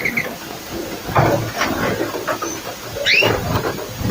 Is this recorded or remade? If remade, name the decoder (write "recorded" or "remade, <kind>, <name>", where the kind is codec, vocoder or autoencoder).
recorded